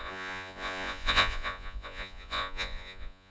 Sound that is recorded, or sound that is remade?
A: remade